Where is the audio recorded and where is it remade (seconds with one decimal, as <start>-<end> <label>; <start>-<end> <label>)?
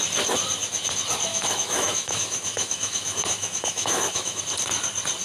0.0-1.3 recorded; 1.3-4.4 remade; 4.4-5.2 recorded